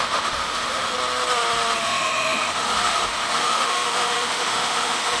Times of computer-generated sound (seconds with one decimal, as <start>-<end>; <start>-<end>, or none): 0.0-0.9; 1.8-5.2